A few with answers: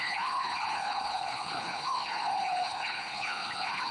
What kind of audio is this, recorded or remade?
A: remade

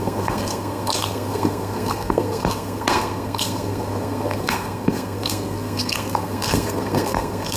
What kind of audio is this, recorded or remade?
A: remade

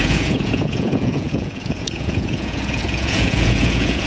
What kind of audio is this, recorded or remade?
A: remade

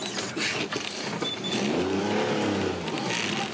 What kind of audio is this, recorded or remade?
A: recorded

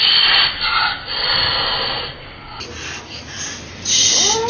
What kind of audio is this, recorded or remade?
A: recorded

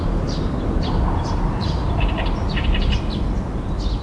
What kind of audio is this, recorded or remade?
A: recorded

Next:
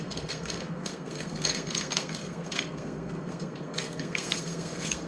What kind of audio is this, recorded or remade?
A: remade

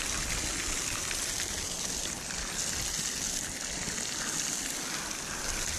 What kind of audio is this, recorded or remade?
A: recorded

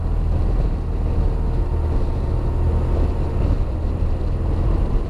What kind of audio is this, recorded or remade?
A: recorded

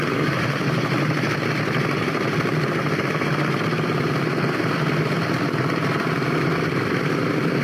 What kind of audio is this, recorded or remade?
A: recorded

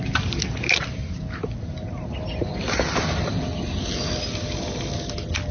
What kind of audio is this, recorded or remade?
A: recorded